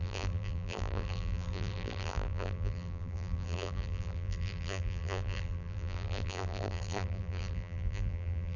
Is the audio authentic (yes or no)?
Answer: no